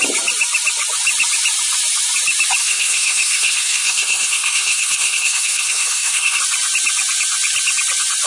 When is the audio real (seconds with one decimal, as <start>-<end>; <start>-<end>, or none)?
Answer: 0.0-2.6; 6.4-8.3